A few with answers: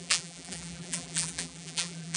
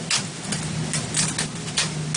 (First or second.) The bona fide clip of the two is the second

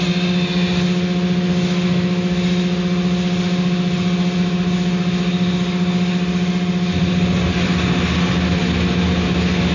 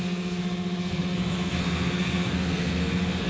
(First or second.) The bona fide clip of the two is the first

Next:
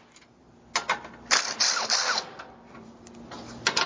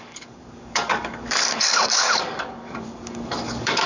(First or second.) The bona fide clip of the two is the first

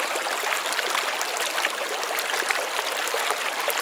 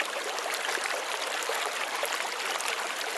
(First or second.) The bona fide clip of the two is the first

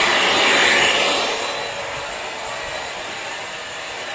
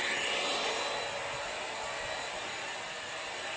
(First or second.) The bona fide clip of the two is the second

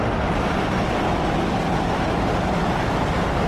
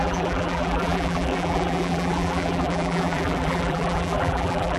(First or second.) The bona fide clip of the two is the first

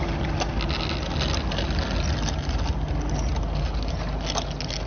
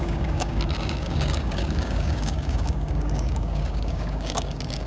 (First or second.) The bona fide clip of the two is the first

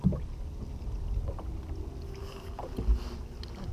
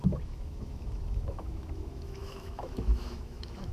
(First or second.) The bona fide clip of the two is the first